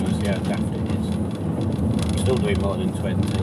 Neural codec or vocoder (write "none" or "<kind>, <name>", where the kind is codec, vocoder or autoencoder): none